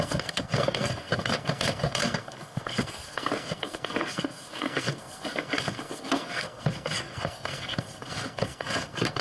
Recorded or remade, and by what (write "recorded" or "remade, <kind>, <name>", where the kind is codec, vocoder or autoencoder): remade, codec, SNAC